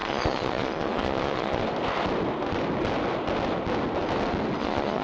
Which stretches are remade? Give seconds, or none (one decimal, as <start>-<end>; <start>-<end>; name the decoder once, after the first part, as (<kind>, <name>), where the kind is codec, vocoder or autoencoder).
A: 0.0-1.6 (vocoder, Vocos); 4.6-5.0